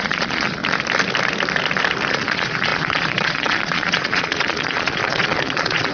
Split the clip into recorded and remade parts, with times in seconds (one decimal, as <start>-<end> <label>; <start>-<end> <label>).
0.0-0.6 remade; 0.6-2.1 recorded; 2.1-5.9 remade